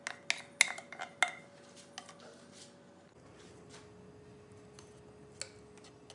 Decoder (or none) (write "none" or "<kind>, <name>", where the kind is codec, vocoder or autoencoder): none